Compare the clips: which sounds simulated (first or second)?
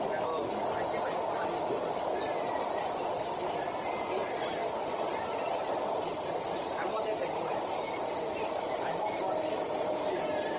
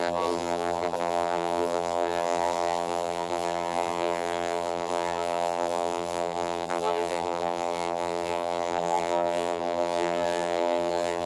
second